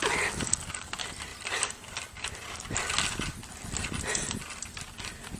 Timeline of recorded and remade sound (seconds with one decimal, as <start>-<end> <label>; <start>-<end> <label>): 0.0-5.4 recorded